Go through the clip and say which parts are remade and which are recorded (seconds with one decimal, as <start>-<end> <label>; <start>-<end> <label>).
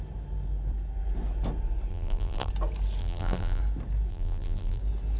0.0-1.9 recorded; 1.9-2.5 remade; 2.5-3.0 recorded; 3.0-3.6 remade; 3.6-4.1 recorded; 4.1-4.8 remade; 4.8-5.2 recorded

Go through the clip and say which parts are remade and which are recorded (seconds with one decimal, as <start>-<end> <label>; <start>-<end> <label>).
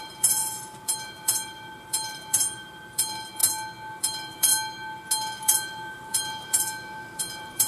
0.0-3.4 remade; 3.4-4.0 recorded; 4.0-4.5 remade; 4.5-5.4 recorded; 5.4-7.7 remade